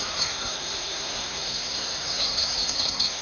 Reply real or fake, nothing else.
fake